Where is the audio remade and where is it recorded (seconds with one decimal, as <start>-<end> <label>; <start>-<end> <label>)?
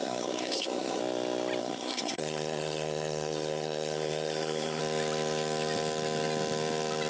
0.0-1.0 remade; 1.0-1.6 recorded; 1.6-4.8 remade; 4.8-7.1 recorded